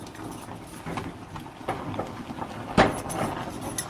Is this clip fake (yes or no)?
no